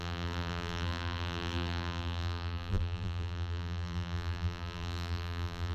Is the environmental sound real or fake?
fake